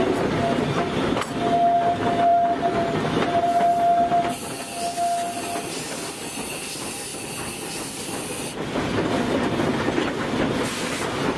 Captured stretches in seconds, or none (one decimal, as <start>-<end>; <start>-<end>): 0.0-11.4